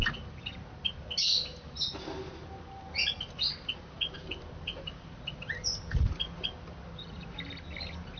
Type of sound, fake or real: real